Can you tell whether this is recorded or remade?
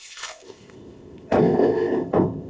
remade